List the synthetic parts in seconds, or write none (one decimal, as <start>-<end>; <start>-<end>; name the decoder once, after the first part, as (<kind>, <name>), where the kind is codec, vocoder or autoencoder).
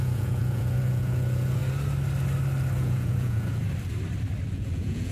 0.0-1.6 (vocoder, Vocos); 2.8-3.6; 4.5-5.1